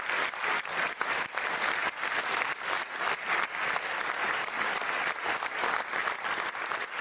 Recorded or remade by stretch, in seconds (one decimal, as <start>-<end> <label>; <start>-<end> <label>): 0.0-7.0 recorded